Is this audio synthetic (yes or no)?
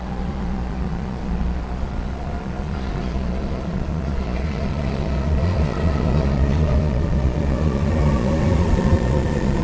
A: yes